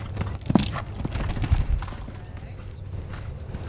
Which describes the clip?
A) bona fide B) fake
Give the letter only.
A